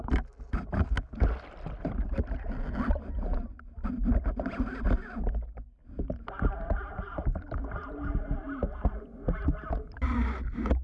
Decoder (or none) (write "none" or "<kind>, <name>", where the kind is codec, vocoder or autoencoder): none